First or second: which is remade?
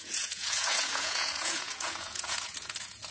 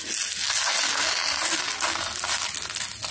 first